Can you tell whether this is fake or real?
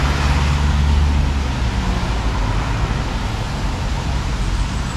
real